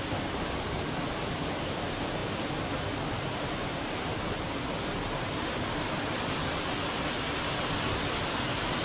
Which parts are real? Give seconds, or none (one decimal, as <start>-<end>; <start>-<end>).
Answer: 0.0-8.8